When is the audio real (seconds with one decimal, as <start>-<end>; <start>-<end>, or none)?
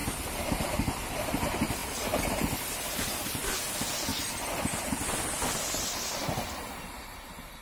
4.1-6.8